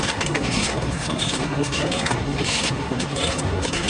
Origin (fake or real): fake